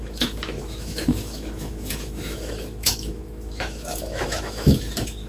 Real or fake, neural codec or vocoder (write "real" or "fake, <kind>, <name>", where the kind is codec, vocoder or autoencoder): fake, autoencoder, DAC-VAE